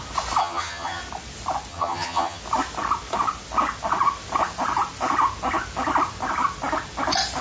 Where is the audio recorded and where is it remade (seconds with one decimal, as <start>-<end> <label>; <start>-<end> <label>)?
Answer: 0.0-0.4 recorded; 0.4-1.0 remade; 1.0-1.7 recorded; 1.7-2.4 remade; 2.4-7.4 recorded